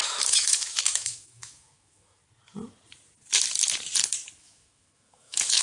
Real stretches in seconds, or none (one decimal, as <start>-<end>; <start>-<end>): 2.2-4.4